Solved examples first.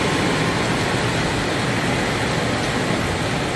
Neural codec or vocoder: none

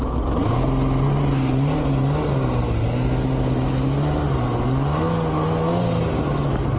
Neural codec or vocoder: none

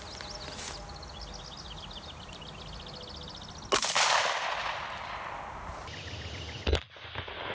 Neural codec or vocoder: none